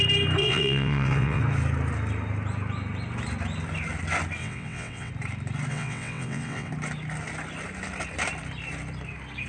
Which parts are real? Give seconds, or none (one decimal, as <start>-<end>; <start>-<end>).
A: 0.0-0.4; 1.4-4.4; 5.1-5.7; 6.7-9.5